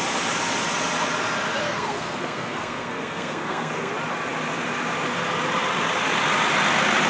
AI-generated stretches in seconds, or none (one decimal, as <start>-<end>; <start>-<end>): 1.6-3.9